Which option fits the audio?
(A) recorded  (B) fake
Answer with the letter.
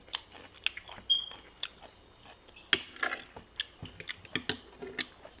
A